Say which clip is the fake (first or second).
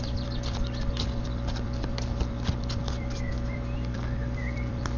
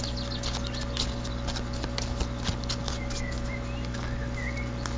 first